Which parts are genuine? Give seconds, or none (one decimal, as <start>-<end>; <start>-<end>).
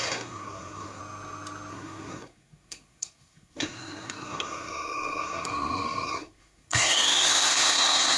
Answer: 1.0-1.7